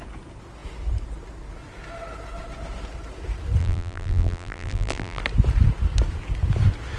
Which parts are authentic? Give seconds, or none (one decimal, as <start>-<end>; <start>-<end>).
0.0-3.6; 5.2-7.0